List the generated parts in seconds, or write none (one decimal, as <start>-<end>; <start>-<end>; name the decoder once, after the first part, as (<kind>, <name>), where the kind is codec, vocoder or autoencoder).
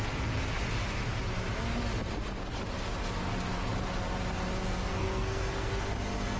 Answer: 4.9-5.7 (codec, SNAC)